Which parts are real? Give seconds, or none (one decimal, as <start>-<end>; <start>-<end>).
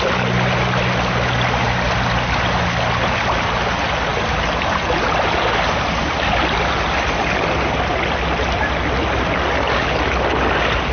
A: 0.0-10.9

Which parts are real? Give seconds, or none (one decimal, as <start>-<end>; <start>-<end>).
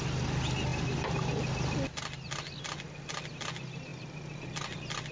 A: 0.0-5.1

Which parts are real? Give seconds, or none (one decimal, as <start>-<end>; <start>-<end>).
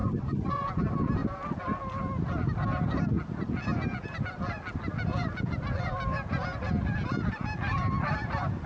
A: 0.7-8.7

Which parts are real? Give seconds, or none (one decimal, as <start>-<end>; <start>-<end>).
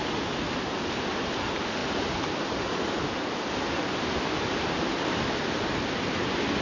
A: 0.0-6.6